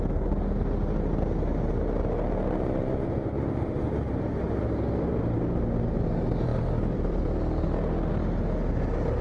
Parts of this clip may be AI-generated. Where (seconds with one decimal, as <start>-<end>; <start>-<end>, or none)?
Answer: 6.5-7.2